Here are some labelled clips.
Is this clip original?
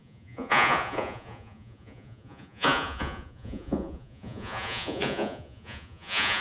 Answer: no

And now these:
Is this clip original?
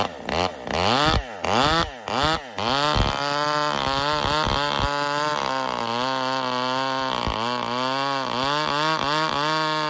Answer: yes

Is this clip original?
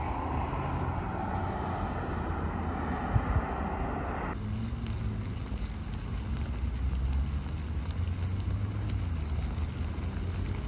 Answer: yes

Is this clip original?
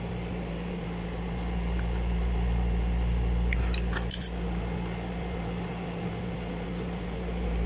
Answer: yes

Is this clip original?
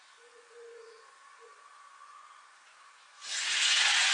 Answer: no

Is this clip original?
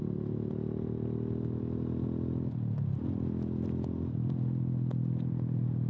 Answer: yes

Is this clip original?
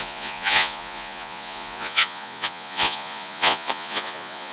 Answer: no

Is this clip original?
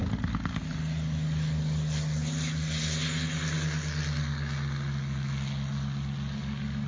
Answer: yes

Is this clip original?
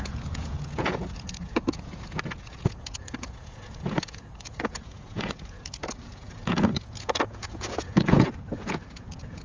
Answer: no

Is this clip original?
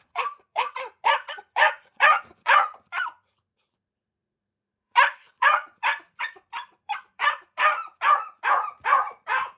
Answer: no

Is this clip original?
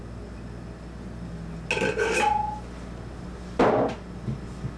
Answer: yes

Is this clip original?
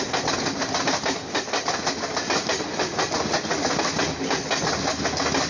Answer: yes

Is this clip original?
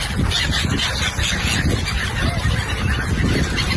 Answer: yes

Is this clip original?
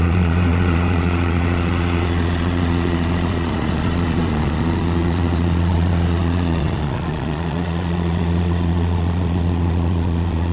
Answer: no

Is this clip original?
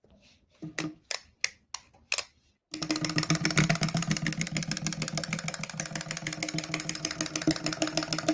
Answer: yes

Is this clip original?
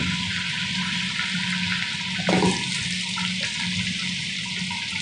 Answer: yes